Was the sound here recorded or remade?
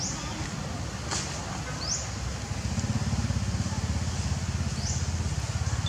recorded